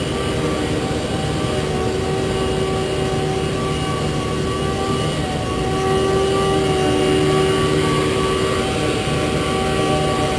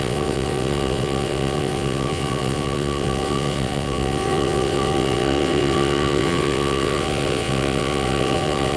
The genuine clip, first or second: first